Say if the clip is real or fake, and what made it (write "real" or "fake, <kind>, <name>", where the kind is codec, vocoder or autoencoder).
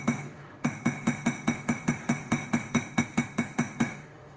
fake, autoencoder, DAC-VAE